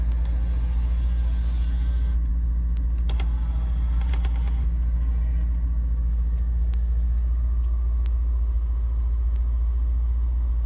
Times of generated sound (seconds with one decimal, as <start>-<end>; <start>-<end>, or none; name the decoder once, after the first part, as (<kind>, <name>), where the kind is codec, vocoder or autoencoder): none